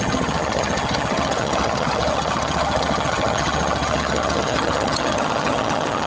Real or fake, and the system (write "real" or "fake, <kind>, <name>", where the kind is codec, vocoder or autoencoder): fake, vocoder, HiFi-GAN